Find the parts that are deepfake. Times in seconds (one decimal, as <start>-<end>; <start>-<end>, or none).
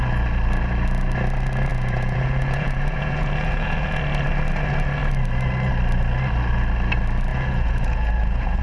1.7-4.0; 7.3-8.6